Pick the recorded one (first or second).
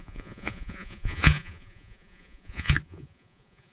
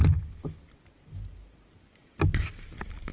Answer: second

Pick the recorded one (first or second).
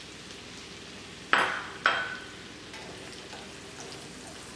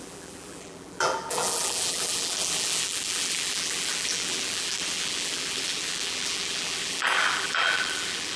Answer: first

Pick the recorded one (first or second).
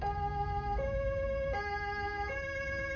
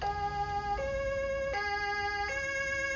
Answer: second